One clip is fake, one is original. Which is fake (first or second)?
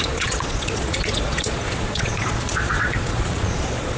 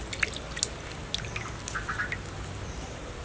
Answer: first